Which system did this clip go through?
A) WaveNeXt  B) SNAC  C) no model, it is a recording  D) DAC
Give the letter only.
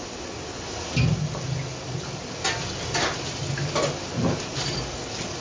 C